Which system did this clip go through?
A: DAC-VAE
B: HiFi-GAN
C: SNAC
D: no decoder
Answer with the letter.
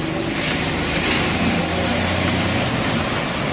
D